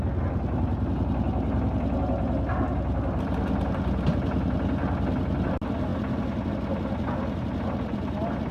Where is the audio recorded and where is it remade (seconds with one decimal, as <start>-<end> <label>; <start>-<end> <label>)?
0.0-8.5 recorded